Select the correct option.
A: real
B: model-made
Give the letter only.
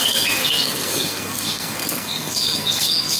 B